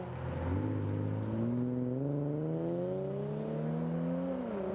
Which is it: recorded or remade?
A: recorded